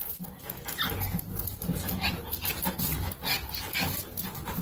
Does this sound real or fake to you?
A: real